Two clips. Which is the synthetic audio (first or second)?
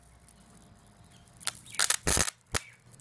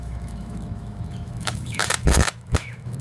second